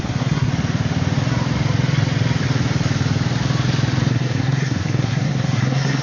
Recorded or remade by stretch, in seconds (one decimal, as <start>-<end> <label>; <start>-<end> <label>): 0.0-0.5 remade; 0.5-4.1 recorded; 4.1-6.0 remade